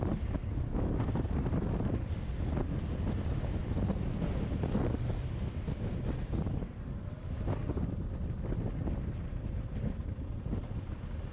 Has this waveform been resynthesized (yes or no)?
no